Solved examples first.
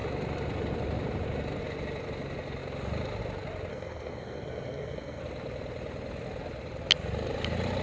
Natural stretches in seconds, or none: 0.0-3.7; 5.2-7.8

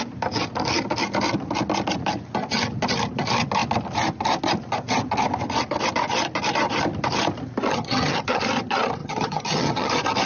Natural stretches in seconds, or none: 0.0-7.7; 8.4-9.0; 9.9-10.3

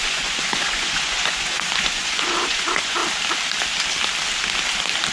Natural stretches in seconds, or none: 3.0-5.1

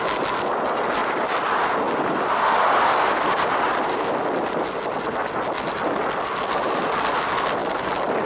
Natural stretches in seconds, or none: 0.0-8.3